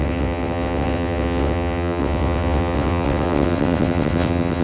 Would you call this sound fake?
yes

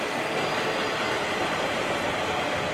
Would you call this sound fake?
no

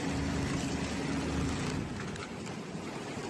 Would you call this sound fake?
no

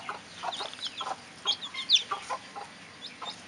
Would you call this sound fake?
no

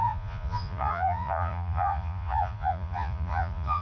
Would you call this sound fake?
yes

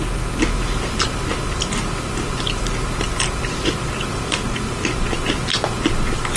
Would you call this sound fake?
no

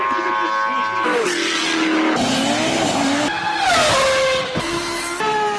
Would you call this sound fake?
no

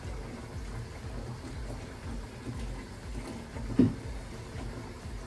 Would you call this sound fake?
no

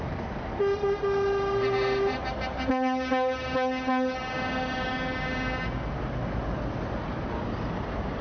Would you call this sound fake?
no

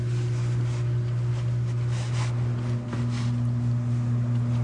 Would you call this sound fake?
no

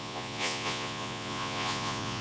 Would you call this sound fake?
yes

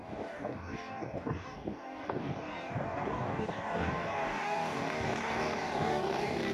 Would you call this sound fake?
yes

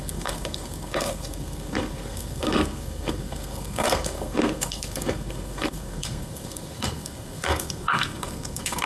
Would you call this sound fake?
yes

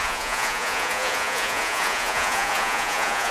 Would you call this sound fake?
yes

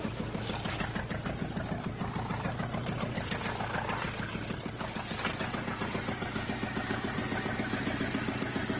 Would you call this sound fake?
no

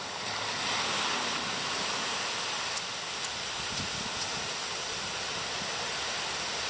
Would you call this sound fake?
no